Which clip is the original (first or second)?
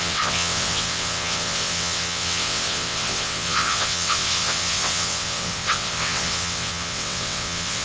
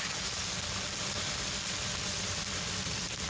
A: second